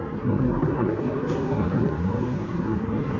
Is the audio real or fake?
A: fake